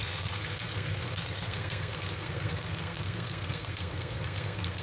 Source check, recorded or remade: remade